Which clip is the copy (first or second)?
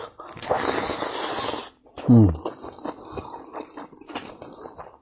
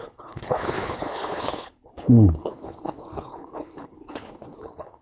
second